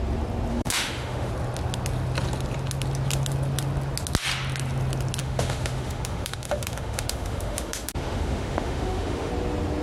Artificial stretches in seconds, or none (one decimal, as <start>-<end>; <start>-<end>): 0.5-1.3; 5.2-9.3